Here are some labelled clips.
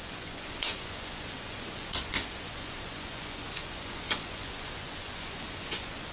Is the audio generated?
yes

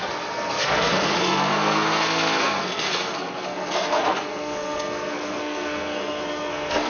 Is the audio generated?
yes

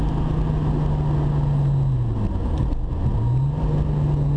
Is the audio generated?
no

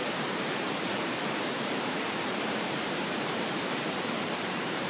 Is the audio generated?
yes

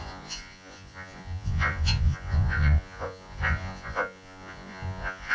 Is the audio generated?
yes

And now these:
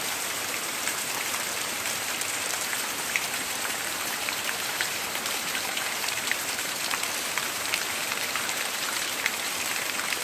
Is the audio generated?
yes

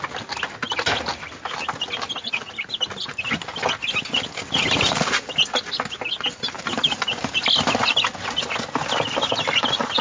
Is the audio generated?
no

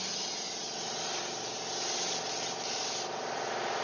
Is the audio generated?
no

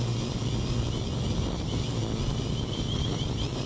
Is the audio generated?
no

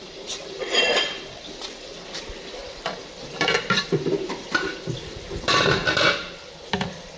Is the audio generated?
yes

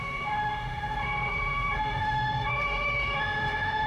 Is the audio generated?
yes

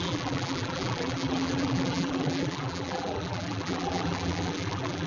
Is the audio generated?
yes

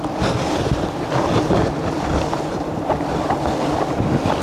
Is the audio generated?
no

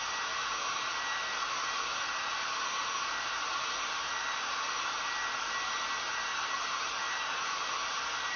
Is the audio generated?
no